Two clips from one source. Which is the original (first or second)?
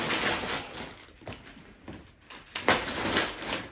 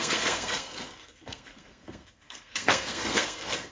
first